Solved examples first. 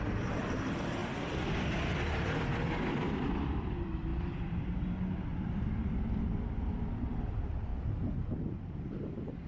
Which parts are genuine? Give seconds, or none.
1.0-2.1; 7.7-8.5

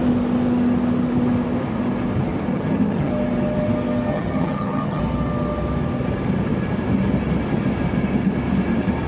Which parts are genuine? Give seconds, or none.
0.0-2.5; 3.1-4.1; 5.0-9.1

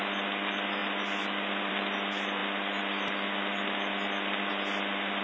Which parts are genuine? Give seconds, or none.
0.0-5.2

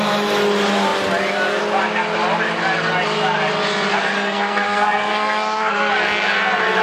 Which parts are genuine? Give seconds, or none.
0.0-4.0; 5.9-6.8